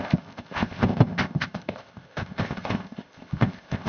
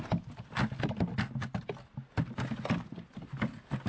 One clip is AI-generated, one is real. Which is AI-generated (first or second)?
first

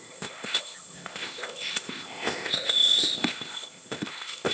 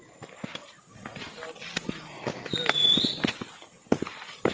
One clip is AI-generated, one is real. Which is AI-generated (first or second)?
first